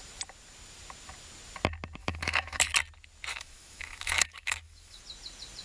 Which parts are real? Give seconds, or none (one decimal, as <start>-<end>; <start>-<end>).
0.0-2.0; 2.6-3.3; 5.0-5.6